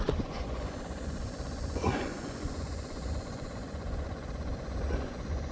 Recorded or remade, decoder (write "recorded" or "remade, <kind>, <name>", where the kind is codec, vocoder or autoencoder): remade, vocoder, Vocos